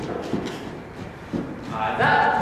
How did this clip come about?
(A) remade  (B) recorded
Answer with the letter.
B